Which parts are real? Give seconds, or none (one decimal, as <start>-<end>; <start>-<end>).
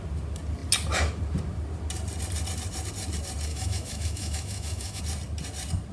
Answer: 0.0-3.5; 5.0-5.9